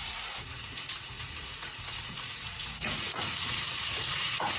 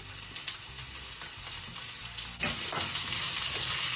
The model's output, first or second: first